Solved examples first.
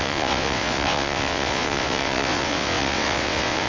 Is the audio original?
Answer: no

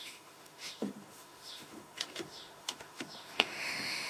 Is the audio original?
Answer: no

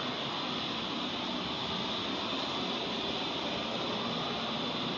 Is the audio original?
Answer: yes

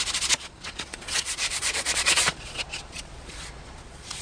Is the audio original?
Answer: no